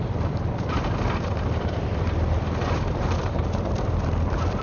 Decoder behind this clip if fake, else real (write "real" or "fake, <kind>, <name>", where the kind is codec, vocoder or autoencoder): fake, vocoder, BigVGAN v2